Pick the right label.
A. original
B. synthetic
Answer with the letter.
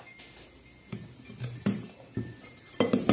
B